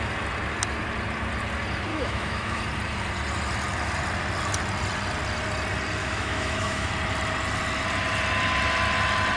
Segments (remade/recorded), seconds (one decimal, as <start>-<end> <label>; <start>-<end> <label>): 0.0-1.9 recorded; 1.9-2.6 remade; 2.6-6.0 recorded; 6.0-6.9 remade; 6.9-9.4 recorded